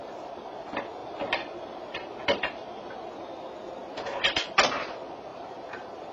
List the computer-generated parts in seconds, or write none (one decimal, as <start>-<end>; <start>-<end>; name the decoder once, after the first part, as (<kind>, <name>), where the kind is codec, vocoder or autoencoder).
1.0-3.0 (vocoder, BigVGAN v2); 5.3-6.1